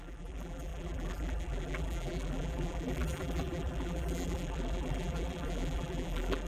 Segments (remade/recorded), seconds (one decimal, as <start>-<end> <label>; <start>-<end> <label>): 0.0-6.5 remade